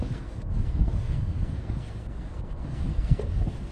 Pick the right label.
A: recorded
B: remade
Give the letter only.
B